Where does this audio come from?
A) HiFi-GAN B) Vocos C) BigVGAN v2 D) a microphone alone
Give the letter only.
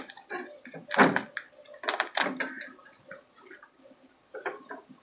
D